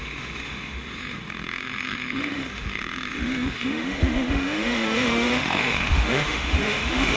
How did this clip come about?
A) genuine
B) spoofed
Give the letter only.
B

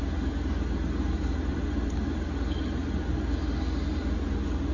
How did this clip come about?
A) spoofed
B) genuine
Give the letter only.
B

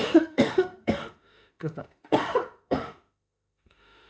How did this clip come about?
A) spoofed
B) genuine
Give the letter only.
A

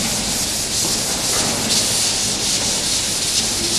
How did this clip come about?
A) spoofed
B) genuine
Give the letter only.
B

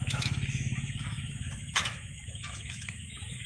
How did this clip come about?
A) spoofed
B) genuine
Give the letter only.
A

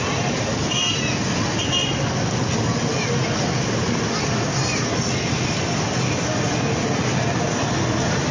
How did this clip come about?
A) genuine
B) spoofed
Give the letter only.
A